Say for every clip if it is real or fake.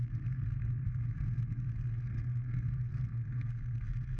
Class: fake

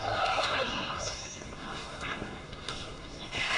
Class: fake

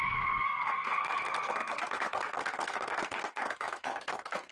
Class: fake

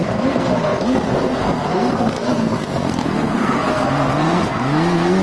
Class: fake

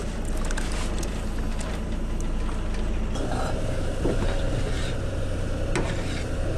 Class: real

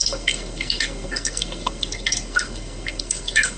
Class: fake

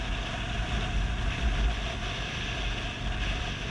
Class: real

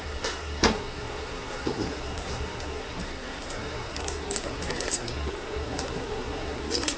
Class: fake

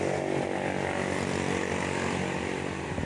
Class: real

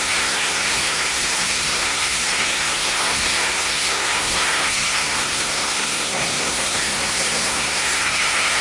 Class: fake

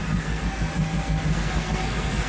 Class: fake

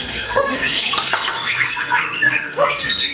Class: fake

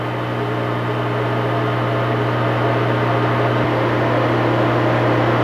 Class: real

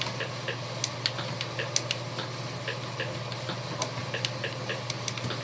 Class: real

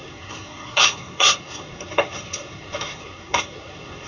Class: fake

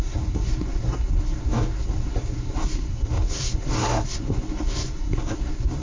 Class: fake